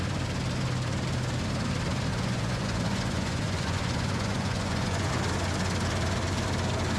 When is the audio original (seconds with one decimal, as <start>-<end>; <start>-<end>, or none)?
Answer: 0.0-2.1; 5.1-7.0